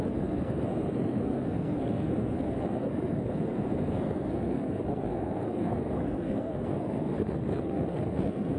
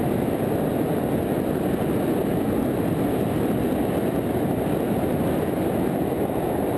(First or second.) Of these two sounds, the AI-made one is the first